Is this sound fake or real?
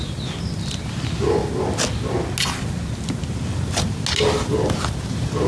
real